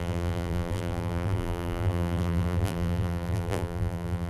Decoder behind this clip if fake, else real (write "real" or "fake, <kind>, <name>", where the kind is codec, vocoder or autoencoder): fake, vocoder, BigVGAN v2